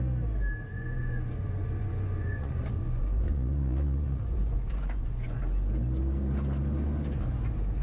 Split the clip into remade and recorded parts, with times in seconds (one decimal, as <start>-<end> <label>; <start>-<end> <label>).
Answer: 0.0-0.7 recorded; 0.7-5.4 remade; 5.4-7.8 recorded